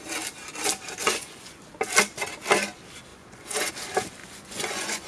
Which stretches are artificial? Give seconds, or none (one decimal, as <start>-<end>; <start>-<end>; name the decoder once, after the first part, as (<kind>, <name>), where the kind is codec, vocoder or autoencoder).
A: 1.0-1.6 (vocoder, Vocos); 3.1-3.7; 4.2-5.1

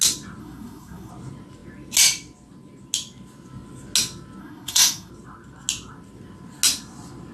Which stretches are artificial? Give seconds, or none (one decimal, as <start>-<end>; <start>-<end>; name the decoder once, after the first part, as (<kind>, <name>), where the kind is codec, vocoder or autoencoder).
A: 0.4-1.1 (codec, SNAC); 4.4-5.1

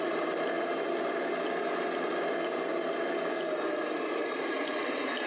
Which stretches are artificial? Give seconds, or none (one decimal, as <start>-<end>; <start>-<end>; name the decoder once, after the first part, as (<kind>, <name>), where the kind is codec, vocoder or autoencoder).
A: 0.0-0.7 (vocoder, BigVGAN v2); 3.9-5.3

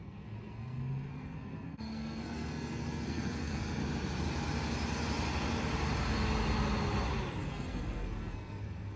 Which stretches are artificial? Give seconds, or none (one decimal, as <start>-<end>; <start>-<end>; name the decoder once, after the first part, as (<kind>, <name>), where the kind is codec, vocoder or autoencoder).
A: 0.0-3.8 (codec, SNAC); 7.5-9.0